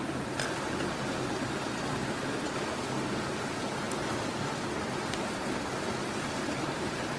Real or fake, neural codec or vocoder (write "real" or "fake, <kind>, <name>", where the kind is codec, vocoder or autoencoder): real